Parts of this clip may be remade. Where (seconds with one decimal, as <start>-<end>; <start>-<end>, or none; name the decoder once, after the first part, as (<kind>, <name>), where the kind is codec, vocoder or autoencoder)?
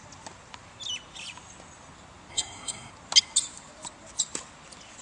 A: 2.3-2.9 (codec, SNAC)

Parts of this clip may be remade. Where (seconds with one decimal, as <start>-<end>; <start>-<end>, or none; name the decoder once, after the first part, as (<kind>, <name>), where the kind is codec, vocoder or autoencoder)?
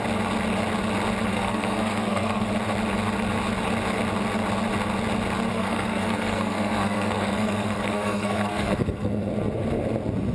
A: 1.3-2.5 (codec, SNAC); 5.5-9.3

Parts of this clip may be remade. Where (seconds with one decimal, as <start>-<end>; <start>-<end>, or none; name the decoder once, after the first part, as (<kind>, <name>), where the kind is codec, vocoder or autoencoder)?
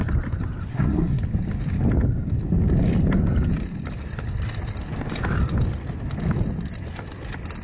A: 0.7-1.2 (codec, SNAC)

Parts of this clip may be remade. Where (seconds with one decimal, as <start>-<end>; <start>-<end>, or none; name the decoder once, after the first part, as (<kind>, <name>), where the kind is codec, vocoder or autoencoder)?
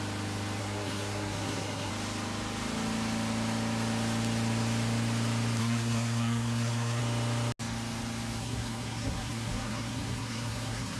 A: 0.6-1.9 (codec, SNAC); 5.6-7.0; 8.4-11.0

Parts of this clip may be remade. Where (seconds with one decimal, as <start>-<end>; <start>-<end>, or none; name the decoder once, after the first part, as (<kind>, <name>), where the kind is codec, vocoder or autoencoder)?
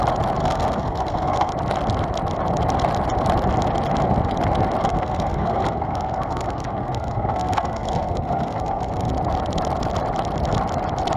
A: 0.4-1.5 (codec, SNAC); 4.8-9.1